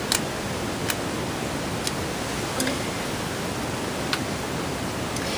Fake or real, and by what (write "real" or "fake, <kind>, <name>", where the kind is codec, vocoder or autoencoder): real